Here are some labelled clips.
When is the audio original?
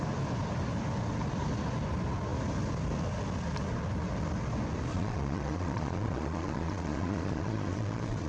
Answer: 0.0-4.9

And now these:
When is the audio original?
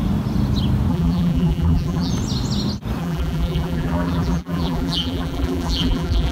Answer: 0.0-0.9; 2.1-3.0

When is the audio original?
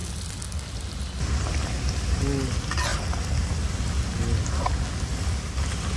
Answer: 0.0-6.0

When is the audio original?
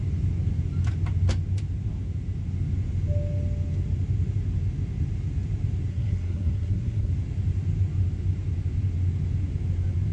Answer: 0.0-5.9; 7.1-10.1